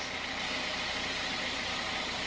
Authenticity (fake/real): real